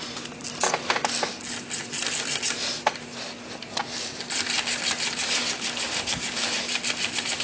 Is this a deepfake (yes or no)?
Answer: no